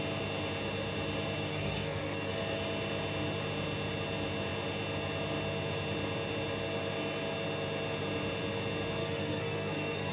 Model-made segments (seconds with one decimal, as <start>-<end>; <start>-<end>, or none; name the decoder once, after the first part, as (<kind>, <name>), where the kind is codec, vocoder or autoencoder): 1.5-2.3 (codec, SNAC); 9.0-10.1